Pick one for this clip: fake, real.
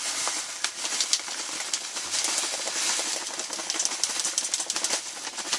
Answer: real